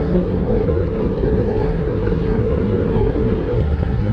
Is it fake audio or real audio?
fake